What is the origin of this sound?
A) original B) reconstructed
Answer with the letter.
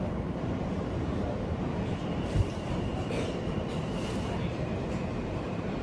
B